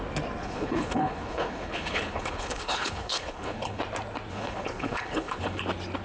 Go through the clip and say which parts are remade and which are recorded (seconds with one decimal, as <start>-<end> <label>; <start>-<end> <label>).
0.0-0.4 recorded; 0.4-3.8 remade; 3.8-4.3 recorded; 4.3-5.6 remade; 5.6-6.0 recorded